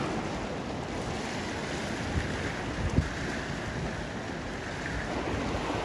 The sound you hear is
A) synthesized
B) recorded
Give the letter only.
B